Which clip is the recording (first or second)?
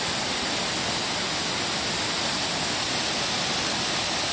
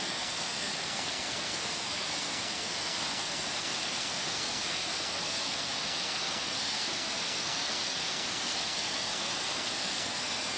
first